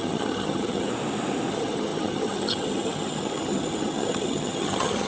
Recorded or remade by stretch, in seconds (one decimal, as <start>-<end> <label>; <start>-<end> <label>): 0.0-0.9 remade; 0.9-1.5 recorded; 1.5-5.1 remade